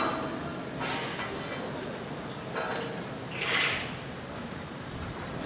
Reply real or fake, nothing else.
real